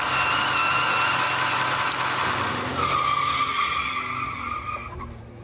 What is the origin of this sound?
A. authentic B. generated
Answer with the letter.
A